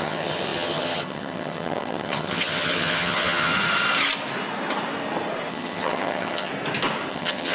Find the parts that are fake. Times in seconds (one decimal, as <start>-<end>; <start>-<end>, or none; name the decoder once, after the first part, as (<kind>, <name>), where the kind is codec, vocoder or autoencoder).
0.0-3.5 (vocoder, HiFi-GAN); 5.5-6.5; 7.1-7.5